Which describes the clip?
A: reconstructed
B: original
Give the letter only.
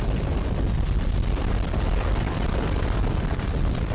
B